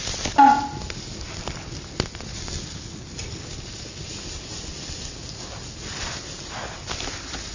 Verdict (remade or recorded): recorded